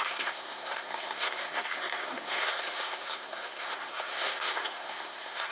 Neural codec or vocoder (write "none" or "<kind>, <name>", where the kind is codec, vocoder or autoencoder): codec, SNAC